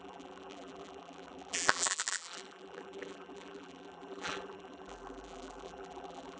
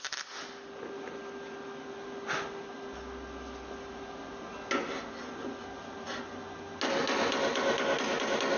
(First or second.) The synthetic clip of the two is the first